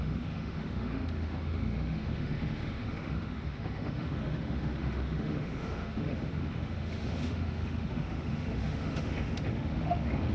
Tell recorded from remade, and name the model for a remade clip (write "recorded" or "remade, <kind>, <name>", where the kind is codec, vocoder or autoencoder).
remade, autoencoder, DAC-VAE